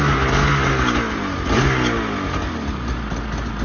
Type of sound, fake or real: real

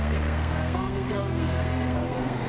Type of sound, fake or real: fake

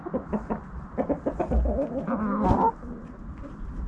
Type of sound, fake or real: real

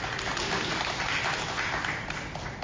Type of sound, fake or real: real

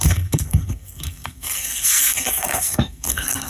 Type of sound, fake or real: fake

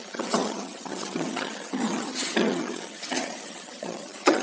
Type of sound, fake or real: fake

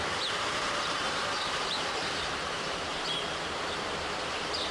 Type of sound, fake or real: fake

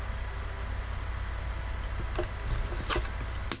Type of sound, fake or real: real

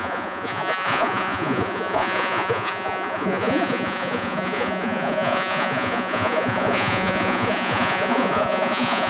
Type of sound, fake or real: fake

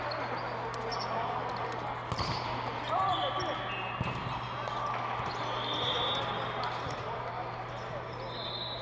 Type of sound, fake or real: real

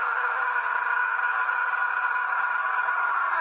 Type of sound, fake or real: real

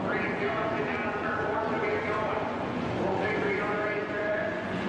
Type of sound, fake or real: fake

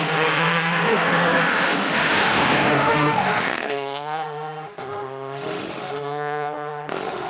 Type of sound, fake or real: fake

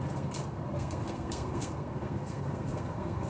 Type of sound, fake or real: fake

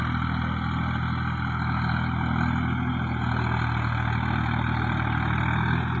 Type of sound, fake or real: real